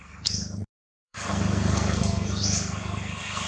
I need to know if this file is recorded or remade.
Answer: remade